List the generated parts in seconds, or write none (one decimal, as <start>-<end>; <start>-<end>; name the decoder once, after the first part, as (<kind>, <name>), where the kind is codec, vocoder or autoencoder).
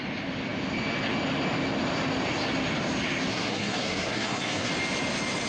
3.3-4.7 (codec, SNAC)